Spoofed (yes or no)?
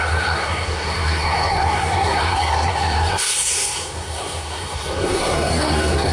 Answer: yes